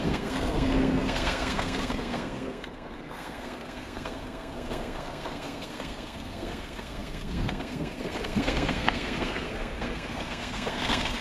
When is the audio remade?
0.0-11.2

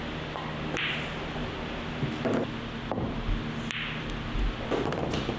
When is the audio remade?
none

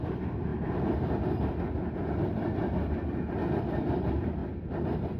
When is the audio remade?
none

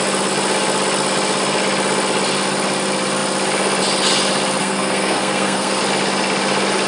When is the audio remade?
4.6-5.8